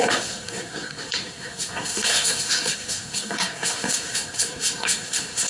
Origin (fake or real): fake